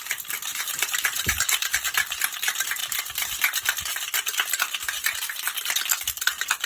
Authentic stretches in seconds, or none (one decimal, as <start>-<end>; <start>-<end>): 0.0-0.5; 1.7-6.7